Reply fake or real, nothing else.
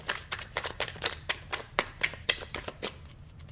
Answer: fake